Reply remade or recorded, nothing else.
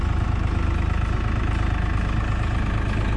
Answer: recorded